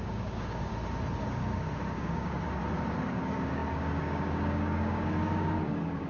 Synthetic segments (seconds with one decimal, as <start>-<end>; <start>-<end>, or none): 0.0-0.7; 1.2-2.6; 3.1-6.1